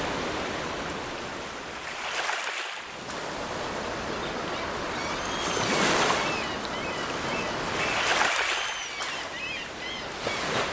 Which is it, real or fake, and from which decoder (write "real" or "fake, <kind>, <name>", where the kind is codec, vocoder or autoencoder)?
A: real